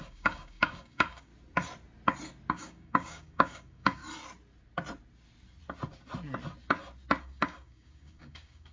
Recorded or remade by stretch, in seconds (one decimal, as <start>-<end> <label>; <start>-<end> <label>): 0.0-1.3 remade; 1.3-2.5 recorded; 2.5-4.0 remade; 4.0-7.2 recorded; 7.2-8.7 remade

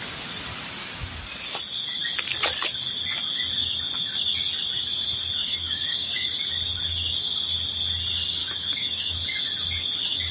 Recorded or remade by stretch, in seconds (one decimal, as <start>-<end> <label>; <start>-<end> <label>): 0.0-5.4 recorded; 5.4-6.3 remade; 6.3-8.4 recorded; 8.4-9.1 remade; 9.1-10.3 recorded

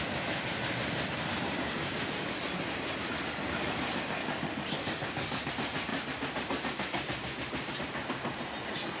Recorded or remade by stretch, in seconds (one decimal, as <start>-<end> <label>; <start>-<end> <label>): 0.0-4.2 recorded; 4.2-5.5 remade; 5.5-9.0 recorded

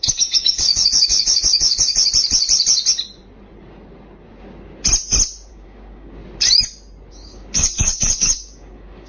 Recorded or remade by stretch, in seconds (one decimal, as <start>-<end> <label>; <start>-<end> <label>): 0.0-2.0 remade; 2.0-5.5 recorded; 5.5-6.2 remade; 6.2-7.1 recorded; 7.1-9.1 remade

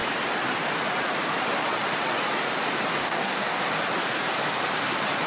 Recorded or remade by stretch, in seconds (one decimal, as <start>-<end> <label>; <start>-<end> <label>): 0.0-3.0 recorded; 3.0-3.6 remade; 3.6-5.3 recorded